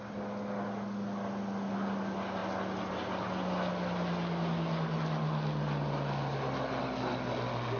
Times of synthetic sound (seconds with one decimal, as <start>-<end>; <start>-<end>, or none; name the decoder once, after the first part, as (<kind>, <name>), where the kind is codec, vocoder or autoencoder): none

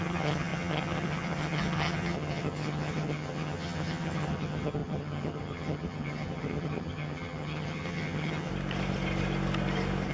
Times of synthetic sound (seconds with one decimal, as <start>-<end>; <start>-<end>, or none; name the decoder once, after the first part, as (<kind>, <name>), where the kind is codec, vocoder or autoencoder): 0.0-8.5 (vocoder, HiFi-GAN)